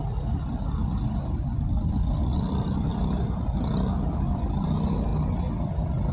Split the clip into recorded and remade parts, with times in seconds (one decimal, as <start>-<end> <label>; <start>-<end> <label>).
0.0-6.1 recorded